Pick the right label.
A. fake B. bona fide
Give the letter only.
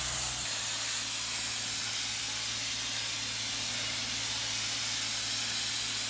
B